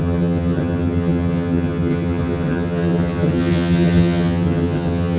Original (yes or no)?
no